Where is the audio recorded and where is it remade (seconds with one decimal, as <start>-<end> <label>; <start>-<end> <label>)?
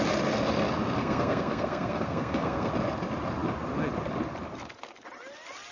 0.0-1.0 recorded; 1.0-2.7 remade; 2.7-5.7 recorded